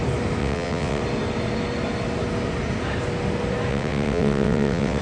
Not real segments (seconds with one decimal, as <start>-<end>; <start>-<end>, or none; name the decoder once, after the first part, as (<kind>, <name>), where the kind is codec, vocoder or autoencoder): 0.4-1.0 (vocoder, WaveNeXt); 3.7-5.0